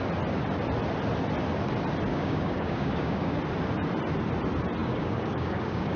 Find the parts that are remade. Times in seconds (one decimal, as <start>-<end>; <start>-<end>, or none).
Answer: 2.1-3.4; 4.8-6.0